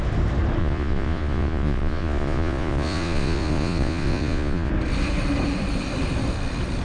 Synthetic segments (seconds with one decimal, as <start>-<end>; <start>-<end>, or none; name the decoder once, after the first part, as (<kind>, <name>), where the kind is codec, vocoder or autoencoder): 0.6-4.7 (vocoder, Vocos)